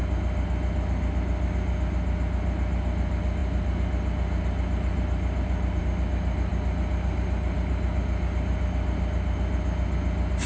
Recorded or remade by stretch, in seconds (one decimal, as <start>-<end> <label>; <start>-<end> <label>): 0.0-10.5 recorded

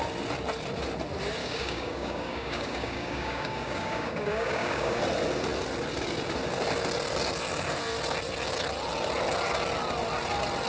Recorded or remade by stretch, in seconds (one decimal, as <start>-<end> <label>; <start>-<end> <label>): 0.0-1.4 recorded; 1.4-5.0 remade; 5.0-10.7 recorded

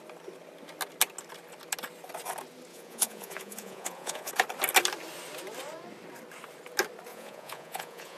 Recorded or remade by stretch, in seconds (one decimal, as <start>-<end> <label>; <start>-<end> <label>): 0.0-2.7 recorded; 2.7-4.3 remade; 4.3-7.1 recorded; 7.1-8.2 remade

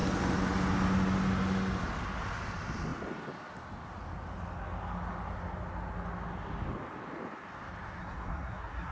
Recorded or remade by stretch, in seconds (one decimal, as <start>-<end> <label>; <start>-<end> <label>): 0.0-8.0 recorded; 8.0-8.9 remade

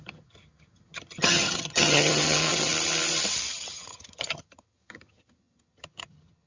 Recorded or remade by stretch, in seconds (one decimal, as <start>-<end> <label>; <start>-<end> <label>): 0.0-2.7 remade; 2.7-3.5 recorded; 3.5-6.5 remade